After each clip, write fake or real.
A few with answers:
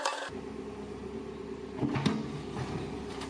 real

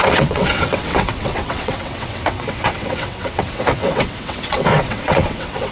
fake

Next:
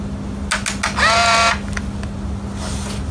real